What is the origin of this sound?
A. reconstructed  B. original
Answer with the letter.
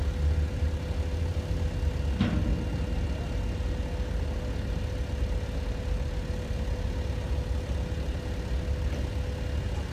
B